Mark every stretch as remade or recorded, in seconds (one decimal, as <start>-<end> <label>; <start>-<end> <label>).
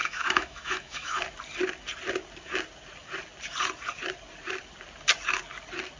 0.0-1.2 remade; 1.2-6.0 recorded